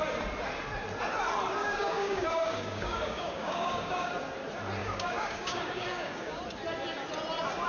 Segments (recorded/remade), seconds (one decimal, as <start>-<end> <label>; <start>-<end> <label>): 0.0-1.6 recorded; 1.6-4.1 remade; 4.1-4.8 recorded; 4.8-6.4 remade; 6.4-7.7 recorded